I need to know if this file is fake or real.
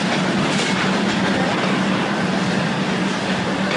real